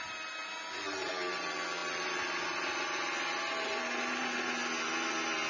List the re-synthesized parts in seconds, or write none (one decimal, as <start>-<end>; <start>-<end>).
none